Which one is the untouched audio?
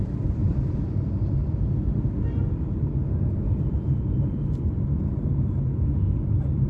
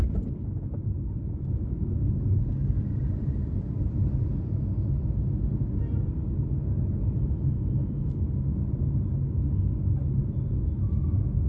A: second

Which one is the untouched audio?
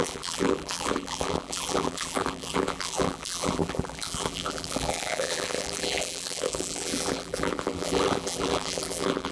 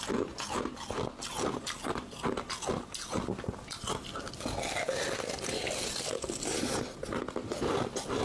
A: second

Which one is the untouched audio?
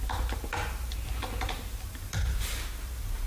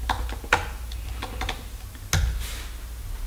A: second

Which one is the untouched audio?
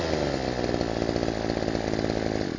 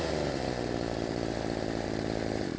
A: first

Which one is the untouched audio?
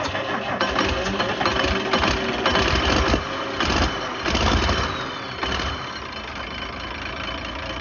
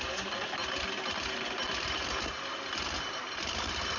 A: first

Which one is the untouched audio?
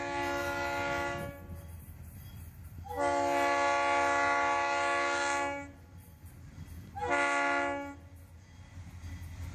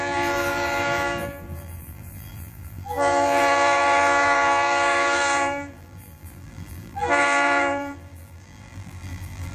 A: first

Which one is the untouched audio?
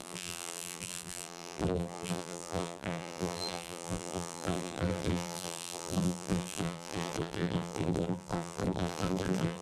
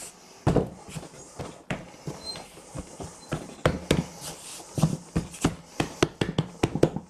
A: second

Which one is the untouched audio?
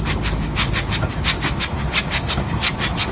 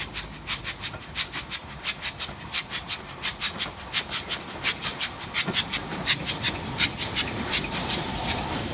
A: first